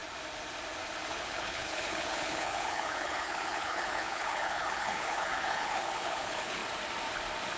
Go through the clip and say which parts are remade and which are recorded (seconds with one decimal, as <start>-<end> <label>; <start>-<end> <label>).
0.0-1.1 recorded; 1.1-6.6 remade; 6.6-7.6 recorded